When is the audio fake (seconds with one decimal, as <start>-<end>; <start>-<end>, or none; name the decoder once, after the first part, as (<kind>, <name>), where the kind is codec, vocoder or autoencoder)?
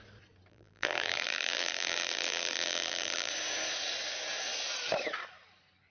0.5-3.3 (vocoder, BigVGAN v2)